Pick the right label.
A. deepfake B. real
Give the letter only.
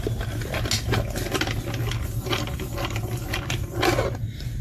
B